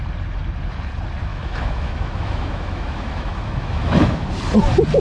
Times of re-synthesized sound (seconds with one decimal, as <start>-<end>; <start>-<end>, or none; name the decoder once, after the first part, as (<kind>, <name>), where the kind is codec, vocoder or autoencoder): 1.3-4.3 (autoencoder, DAC-VAE)